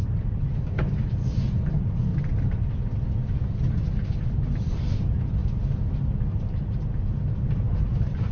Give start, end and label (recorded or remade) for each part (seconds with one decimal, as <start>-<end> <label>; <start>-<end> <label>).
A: 0.0-2.1 recorded; 2.1-2.7 remade; 2.7-8.3 recorded